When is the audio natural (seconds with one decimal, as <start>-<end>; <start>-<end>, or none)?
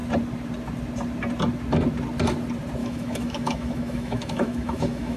0.0-2.8